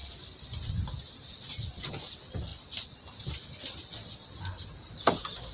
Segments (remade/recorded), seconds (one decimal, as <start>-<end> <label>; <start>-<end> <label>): 0.0-5.5 recorded